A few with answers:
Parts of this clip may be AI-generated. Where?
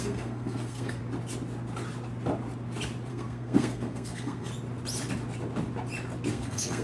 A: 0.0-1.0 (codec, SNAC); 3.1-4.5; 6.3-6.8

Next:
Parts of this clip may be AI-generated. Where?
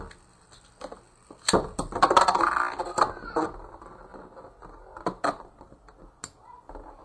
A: none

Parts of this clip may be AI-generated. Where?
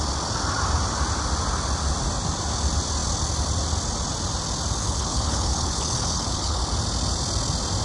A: 4.8-6.6 (codec, HILCodec)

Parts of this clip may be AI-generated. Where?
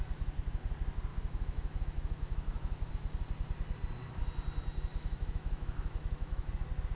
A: 1.1-2.9 (autoencoder, DAC-VAE); 4.9-6.5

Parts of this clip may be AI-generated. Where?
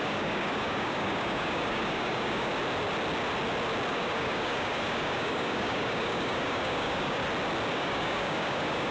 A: 0.0-2.5 (codec, DAC); 3.9-7.2; 7.7-8.9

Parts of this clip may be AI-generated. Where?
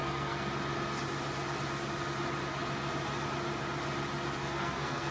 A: 0.0-0.5 (codec, SNAC); 4.4-5.1